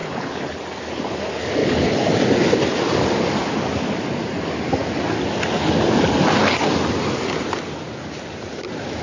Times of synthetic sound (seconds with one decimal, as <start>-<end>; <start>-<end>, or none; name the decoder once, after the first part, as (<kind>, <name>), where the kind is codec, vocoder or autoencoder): 0.0-0.6 (codec, HILCodec); 1.6-2.1